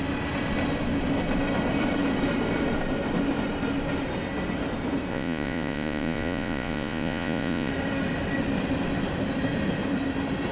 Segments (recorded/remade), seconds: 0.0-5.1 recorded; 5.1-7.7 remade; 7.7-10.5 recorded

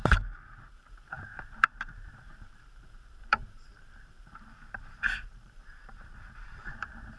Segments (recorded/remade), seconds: 0.0-7.2 remade

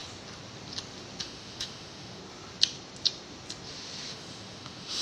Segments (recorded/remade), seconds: 0.0-1.2 recorded; 1.2-2.2 remade; 2.2-4.1 recorded; 4.1-5.0 remade

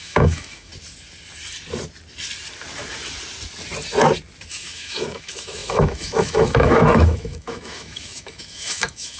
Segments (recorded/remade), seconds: 0.0-0.7 remade; 0.7-4.5 recorded; 4.5-9.2 remade